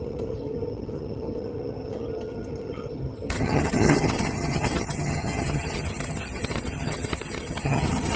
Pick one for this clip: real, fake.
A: fake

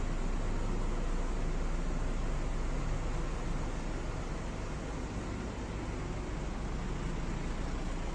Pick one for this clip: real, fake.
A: real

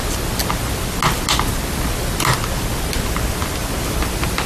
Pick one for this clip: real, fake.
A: real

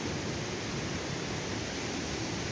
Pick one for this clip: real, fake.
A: real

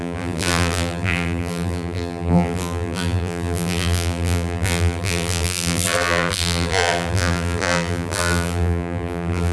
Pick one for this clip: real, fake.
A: fake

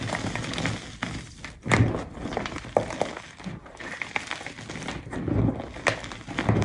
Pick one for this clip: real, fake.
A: real